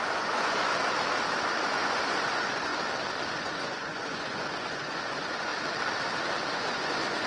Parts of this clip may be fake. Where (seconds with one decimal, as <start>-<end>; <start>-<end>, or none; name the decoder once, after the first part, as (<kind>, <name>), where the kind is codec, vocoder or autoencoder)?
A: 0.0-0.7 (vocoder, Vocos); 1.5-2.7; 3.3-5.5; 6.5-7.3